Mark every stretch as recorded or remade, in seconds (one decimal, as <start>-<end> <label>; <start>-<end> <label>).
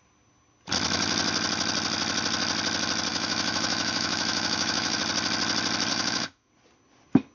0.0-3.1 recorded; 3.1-5.0 remade; 5.0-5.9 recorded; 5.9-6.5 remade; 6.5-7.3 recorded